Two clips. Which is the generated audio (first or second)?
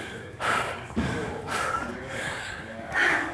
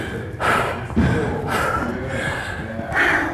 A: first